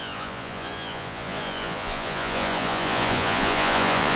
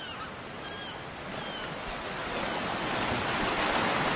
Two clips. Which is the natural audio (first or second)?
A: second